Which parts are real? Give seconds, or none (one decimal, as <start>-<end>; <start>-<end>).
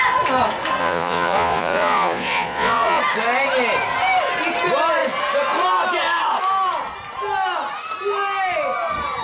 0.0-0.8; 3.0-9.2